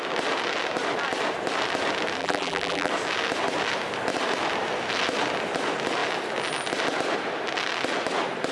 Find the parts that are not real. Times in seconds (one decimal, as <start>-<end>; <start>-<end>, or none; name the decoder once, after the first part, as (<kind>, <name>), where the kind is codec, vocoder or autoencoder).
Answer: 2.2-2.9 (vocoder, BigVGAN v2)